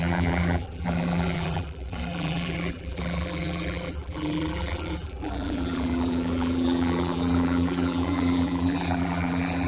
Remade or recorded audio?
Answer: remade